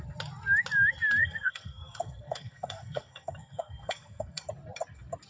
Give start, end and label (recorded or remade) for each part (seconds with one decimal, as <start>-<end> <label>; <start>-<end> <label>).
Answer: 0.0-1.2 recorded; 1.2-4.4 remade; 4.4-5.3 recorded